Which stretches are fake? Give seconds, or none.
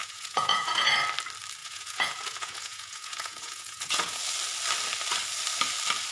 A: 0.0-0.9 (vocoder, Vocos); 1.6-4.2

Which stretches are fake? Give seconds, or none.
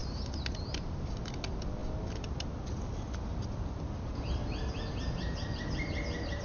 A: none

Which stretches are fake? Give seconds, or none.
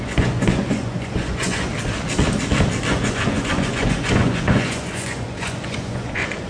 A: 0.0-1.7 (vocoder, Vocos); 2.9-6.5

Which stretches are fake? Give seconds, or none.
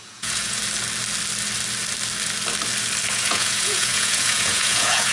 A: 0.0-0.6 (vocoder, Vocos); 3.1-5.1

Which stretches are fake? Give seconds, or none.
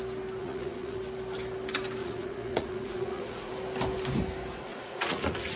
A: 0.4-1.0 (vocoder, Vocos); 2.0-3.5; 4.7-5.6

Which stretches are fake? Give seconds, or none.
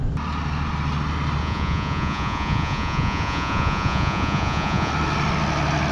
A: 1.4-4.9 (vocoder, Vocos)